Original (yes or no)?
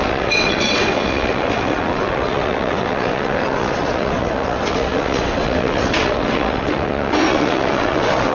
no